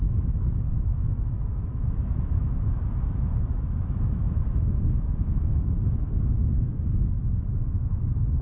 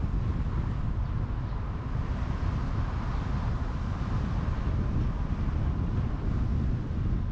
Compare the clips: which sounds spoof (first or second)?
first